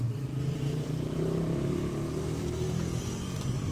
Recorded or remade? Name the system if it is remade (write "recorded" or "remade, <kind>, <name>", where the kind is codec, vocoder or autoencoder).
remade, vocoder, BigVGAN v2